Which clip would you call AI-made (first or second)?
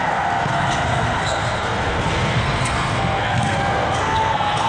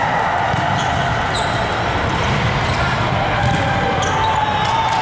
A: first